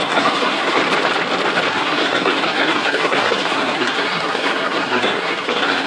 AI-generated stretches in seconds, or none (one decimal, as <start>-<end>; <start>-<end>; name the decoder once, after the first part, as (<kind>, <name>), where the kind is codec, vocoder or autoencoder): 0.0-0.8 (codec, SNAC); 1.7-5.9

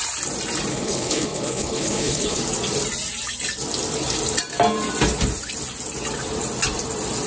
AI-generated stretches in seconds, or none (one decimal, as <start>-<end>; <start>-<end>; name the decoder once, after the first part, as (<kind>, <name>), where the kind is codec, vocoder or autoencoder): 0.7-2.4 (codec, HILCodec)

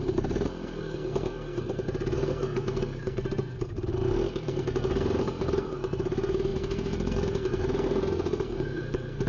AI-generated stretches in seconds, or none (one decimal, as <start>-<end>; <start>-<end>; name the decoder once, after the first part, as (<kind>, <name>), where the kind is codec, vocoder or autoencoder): 0.0-9.3 (codec, SNAC)

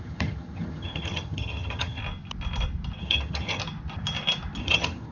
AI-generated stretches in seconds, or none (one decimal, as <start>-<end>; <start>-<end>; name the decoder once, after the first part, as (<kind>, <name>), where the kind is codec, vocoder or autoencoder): 0.0-2.0 (vocoder, HiFi-GAN); 3.0-3.6; 4.6-5.1